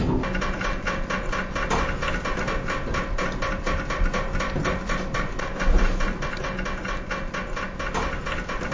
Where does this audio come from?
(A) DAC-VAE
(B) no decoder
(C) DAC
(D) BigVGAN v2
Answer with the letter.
B